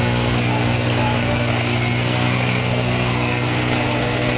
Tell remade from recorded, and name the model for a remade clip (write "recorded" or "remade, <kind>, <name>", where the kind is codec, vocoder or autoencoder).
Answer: remade, codec, SNAC